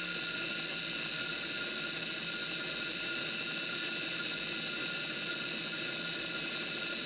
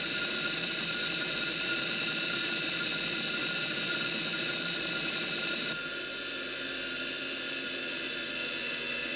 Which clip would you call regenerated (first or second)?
second